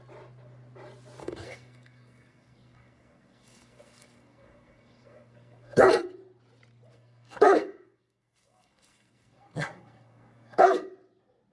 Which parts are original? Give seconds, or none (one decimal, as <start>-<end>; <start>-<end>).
0.0-1.2; 6.1-6.9; 10.9-11.5